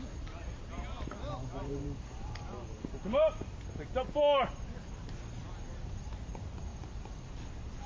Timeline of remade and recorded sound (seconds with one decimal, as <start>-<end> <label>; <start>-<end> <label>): 0.0-1.6 recorded; 1.6-3.0 remade; 3.0-5.4 recorded; 5.4-6.1 remade; 6.1-6.7 recorded; 6.7-7.3 remade; 7.3-7.9 recorded